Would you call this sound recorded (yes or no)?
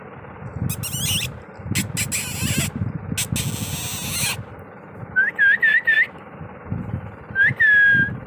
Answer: yes